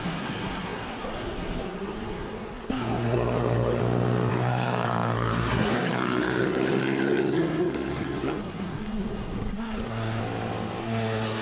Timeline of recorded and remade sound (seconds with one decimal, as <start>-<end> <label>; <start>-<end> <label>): 0.0-3.8 remade; 3.8-4.3 recorded; 4.3-10.2 remade; 10.2-10.8 recorded; 10.8-11.4 remade